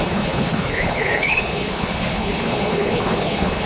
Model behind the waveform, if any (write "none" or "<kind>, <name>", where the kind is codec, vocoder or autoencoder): codec, HILCodec